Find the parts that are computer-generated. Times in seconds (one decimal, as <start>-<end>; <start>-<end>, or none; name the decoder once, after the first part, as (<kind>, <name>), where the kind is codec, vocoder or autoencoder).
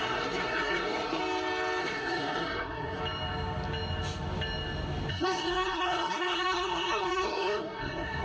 0.0-1.2 (codec, SNAC); 1.8-3.0; 5.1-8.2